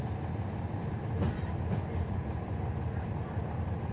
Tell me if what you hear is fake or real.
fake